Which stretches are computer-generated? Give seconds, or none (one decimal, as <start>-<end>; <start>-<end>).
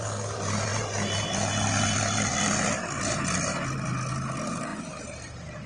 4.7-5.7